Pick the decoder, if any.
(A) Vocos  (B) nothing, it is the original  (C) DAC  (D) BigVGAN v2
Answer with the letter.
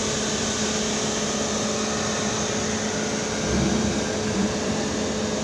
B